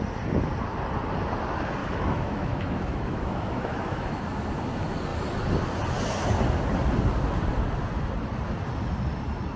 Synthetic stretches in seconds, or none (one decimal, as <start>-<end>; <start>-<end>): 1.8-4.2